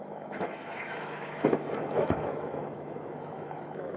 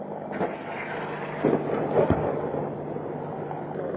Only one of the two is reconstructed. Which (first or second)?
first